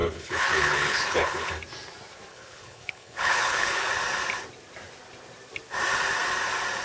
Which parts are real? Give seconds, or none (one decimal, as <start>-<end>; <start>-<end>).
1.5-2.3; 3.9-6.8